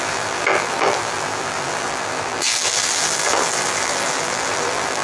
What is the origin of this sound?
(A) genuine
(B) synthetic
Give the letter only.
B